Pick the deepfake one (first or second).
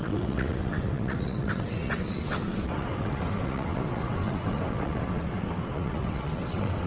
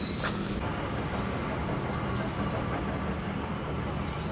first